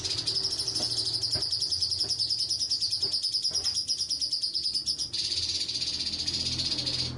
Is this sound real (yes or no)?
yes